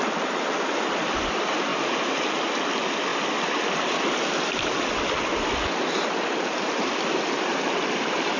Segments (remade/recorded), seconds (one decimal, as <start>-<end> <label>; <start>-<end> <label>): 0.0-8.4 recorded